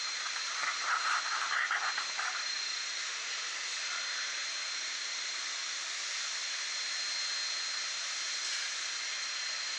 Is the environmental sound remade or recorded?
recorded